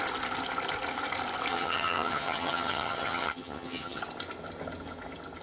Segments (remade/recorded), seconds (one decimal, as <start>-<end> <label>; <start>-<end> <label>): 0.0-1.5 recorded; 1.5-4.0 remade; 4.0-5.4 recorded